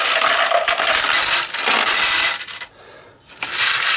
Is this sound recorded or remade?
recorded